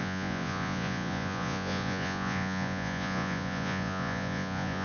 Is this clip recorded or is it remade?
remade